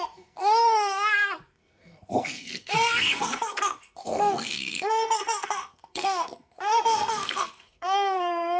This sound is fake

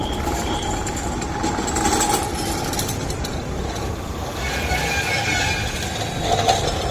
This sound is real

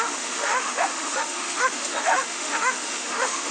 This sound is fake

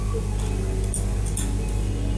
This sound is real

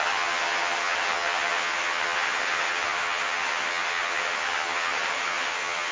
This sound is fake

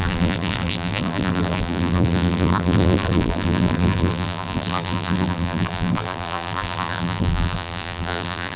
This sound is fake